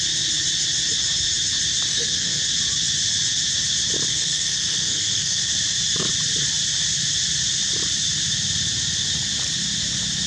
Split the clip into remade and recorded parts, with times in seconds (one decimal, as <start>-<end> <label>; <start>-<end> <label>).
0.0-1.9 recorded; 1.9-2.4 remade; 2.4-4.1 recorded; 4.1-5.4 remade; 5.4-10.3 recorded